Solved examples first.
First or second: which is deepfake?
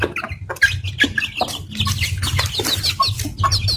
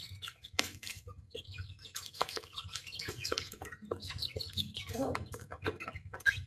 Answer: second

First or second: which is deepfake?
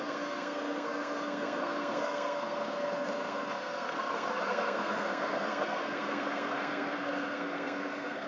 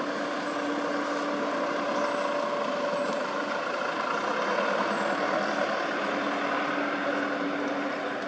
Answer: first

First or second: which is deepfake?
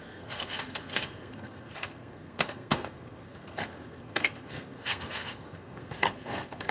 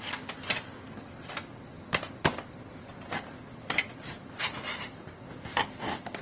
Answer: first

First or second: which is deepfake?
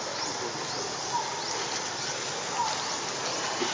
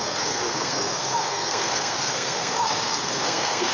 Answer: second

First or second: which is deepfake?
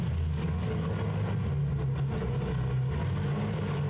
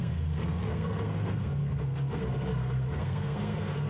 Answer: second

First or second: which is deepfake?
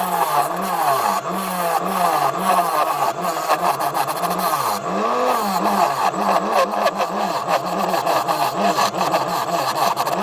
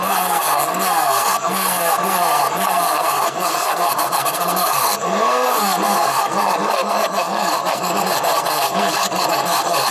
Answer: second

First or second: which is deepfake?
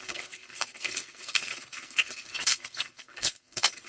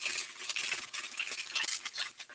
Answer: first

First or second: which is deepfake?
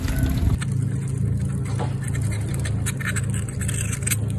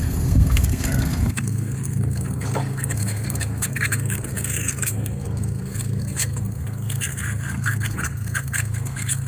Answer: second